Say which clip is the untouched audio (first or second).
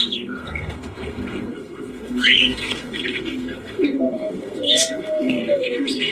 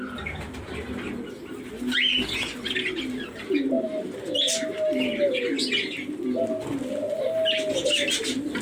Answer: second